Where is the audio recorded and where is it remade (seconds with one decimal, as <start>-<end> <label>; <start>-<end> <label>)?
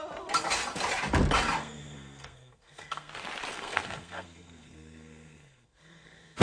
0.0-1.6 recorded; 1.6-3.1 remade; 3.1-3.5 recorded; 3.5-6.4 remade